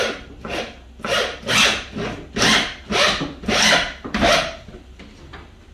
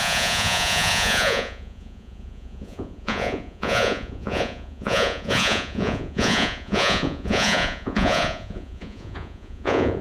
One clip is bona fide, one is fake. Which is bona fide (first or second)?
first